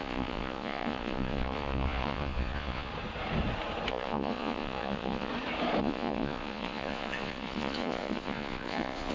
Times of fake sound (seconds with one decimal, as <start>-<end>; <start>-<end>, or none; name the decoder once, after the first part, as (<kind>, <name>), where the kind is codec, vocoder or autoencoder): 0.0-2.9 (vocoder, Vocos); 3.9-5.3; 5.8-9.1